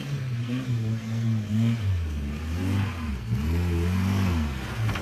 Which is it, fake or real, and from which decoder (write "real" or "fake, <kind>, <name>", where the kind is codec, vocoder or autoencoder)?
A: fake, codec, SNAC